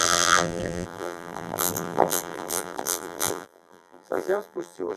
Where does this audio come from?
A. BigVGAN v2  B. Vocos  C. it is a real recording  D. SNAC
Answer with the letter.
A